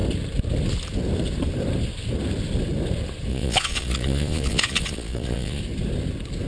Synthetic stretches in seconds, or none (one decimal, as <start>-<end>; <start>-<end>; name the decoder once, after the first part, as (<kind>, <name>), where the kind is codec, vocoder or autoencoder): 3.3-5.6 (vocoder, Vocos)